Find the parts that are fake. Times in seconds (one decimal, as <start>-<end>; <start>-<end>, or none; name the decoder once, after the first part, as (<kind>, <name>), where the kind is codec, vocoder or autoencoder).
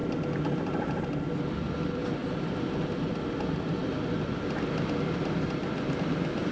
1.4-2.2 (vocoder, BigVGAN v2); 2.8-6.5